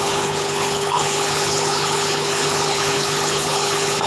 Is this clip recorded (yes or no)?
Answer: no